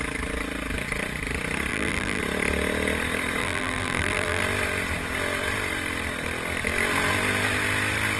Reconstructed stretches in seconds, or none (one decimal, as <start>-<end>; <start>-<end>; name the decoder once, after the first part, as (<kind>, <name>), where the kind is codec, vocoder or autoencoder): 1.7-2.2 (vocoder, BigVGAN v2); 3.4-4.4